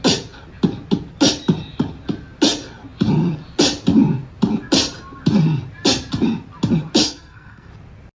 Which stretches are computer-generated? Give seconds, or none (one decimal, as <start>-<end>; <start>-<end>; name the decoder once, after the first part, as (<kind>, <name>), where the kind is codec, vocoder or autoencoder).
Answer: 7.0-7.7 (codec, SNAC)